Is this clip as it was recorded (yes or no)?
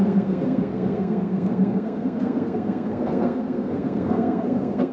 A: no